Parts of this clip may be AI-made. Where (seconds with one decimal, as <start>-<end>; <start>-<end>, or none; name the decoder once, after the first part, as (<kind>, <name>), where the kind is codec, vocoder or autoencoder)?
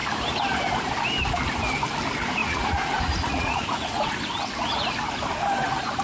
2.4-4.1 (vocoder, Vocos)